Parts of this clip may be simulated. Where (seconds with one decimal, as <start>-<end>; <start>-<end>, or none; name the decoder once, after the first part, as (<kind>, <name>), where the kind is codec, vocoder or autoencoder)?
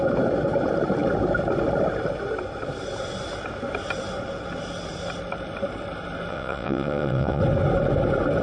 6.3-7.4 (vocoder, WaveNeXt)